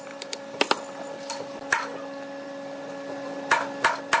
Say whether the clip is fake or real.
real